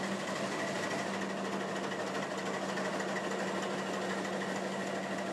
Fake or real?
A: real